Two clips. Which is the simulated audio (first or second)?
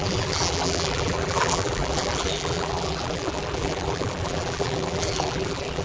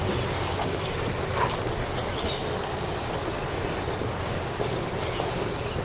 first